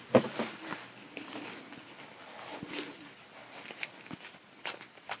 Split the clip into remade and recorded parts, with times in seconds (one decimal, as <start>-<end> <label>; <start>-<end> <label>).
0.0-5.2 recorded